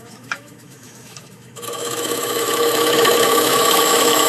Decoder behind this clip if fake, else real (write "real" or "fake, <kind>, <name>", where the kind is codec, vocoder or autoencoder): fake, autoencoder, DAC-VAE